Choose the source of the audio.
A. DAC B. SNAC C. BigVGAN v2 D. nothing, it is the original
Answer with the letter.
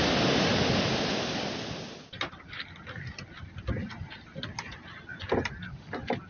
D